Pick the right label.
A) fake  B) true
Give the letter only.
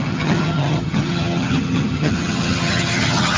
A